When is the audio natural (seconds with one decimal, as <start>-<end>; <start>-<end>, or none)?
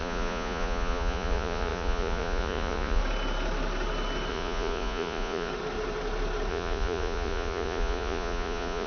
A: 3.0-4.3; 5.5-6.5